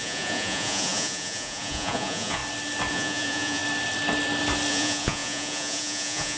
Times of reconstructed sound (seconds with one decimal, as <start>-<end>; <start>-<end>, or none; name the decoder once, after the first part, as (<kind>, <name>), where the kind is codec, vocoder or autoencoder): 0.0-2.4 (vocoder, Vocos); 2.9-3.6; 4.7-6.4